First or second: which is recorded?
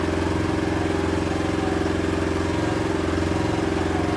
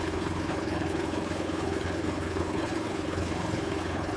first